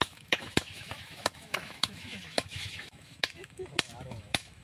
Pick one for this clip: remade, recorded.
remade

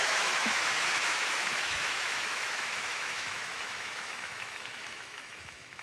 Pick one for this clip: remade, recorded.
remade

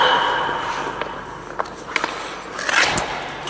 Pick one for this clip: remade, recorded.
recorded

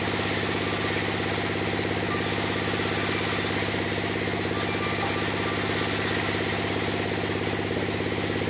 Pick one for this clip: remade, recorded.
recorded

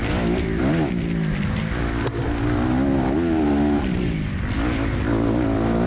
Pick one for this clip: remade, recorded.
recorded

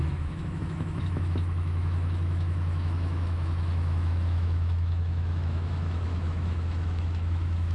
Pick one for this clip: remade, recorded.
remade